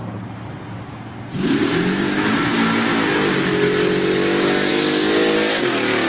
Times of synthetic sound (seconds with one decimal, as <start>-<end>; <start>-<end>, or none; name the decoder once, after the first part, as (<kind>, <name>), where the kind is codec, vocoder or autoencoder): none